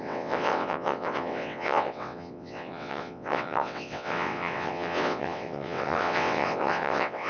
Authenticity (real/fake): fake